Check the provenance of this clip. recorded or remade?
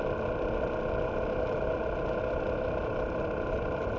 recorded